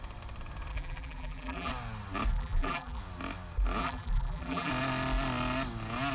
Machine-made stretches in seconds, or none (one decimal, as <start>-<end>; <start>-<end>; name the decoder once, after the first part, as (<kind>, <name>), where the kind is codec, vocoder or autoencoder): 0.7-1.7 (vocoder, BigVGAN v2); 2.3-3.0; 3.8-4.7